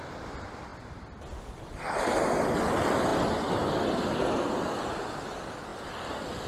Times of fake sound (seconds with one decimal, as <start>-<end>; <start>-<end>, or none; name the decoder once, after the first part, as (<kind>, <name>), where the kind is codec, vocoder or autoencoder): none